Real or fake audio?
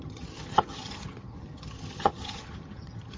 fake